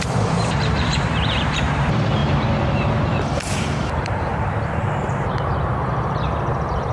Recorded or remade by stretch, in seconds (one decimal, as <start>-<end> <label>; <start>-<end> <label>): 0.0-2.2 remade; 2.2-2.7 recorded; 2.7-3.1 remade; 3.1-3.8 recorded; 3.8-6.9 remade